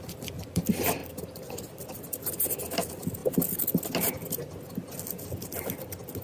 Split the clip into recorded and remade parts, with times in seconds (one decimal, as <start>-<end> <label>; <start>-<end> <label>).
0.0-1.0 recorded; 1.0-1.5 remade; 1.5-6.2 recorded